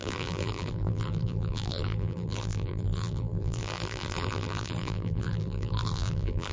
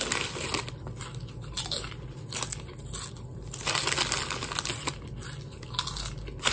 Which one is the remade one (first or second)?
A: first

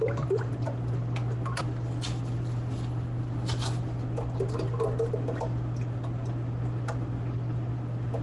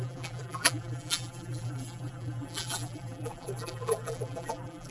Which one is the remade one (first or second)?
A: second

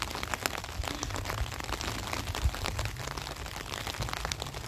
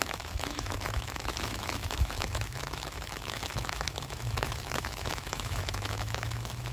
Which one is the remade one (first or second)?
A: second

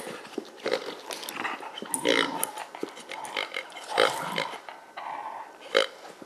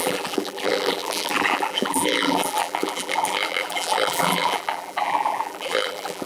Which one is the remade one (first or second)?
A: second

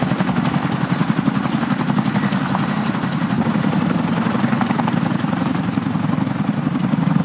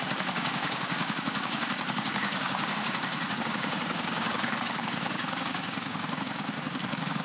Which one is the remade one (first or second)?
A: second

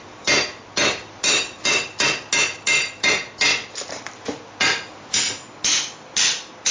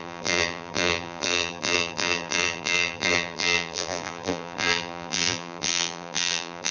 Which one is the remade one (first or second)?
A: second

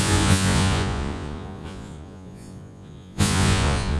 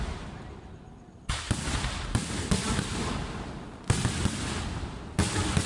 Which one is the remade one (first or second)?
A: first